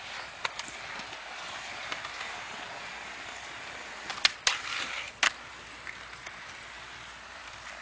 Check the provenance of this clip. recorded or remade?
recorded